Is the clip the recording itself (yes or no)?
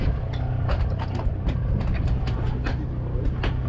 yes